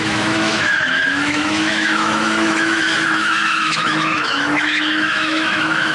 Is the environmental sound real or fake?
fake